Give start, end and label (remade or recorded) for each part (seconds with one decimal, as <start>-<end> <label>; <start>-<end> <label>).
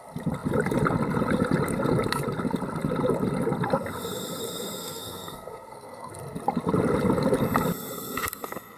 0.0-4.8 recorded; 4.8-6.1 remade; 6.1-8.8 recorded